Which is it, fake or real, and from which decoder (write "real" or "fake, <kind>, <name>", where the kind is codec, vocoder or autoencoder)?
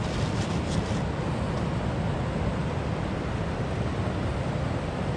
real